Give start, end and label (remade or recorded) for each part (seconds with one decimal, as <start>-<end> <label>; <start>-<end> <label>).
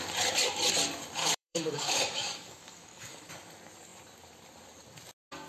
0.0-1.2 recorded; 1.2-3.3 remade; 3.3-5.5 recorded